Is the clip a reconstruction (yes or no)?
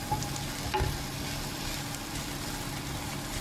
no